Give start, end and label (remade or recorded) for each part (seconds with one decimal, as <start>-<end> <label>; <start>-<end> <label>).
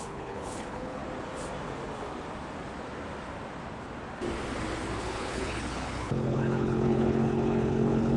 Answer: 0.0-1.0 remade; 1.0-5.0 recorded; 5.0-8.2 remade